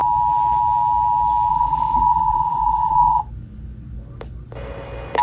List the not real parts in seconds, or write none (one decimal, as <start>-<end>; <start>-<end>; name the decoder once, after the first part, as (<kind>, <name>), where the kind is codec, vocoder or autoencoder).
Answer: 1.5-3.2 (vocoder, BigVGAN v2)